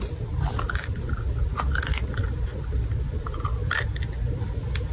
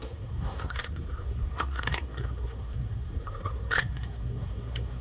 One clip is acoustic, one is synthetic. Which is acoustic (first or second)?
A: first